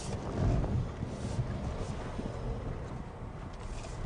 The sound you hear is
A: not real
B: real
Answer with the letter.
B